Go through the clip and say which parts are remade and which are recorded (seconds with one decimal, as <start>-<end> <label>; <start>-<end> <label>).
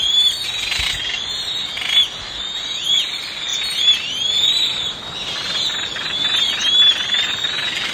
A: 0.0-7.9 remade